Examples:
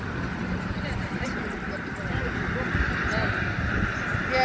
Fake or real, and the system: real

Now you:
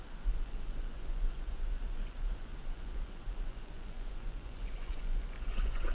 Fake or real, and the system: fake, vocoder, Vocos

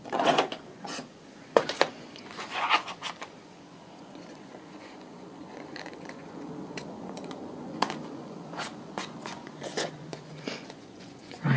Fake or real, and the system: fake, vocoder, Vocos